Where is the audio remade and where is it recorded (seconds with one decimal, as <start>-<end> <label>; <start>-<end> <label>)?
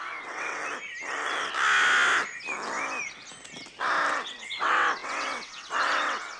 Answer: 0.0-0.6 remade; 0.6-4.1 recorded; 4.1-6.4 remade